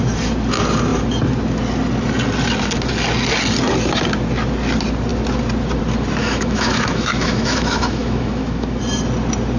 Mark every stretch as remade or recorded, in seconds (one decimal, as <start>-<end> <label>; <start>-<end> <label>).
0.0-6.2 recorded; 6.2-8.8 remade; 8.8-9.6 recorded